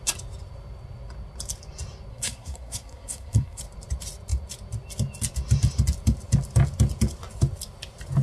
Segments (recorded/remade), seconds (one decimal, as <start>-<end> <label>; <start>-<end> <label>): 0.0-2.1 recorded; 2.1-3.6 remade; 3.6-8.2 recorded